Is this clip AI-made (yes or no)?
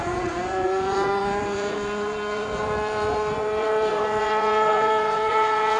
yes